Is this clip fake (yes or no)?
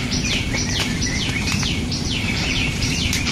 yes